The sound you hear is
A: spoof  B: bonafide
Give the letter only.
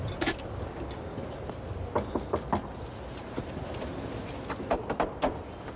B